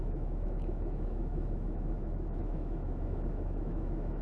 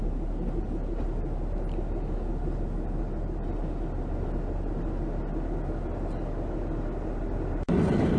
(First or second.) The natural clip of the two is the second